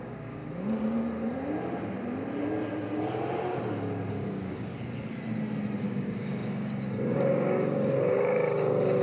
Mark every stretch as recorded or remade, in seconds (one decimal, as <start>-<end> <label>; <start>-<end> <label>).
0.0-0.4 remade; 0.4-4.1 recorded; 4.1-4.7 remade; 4.7-5.8 recorded; 5.8-9.0 remade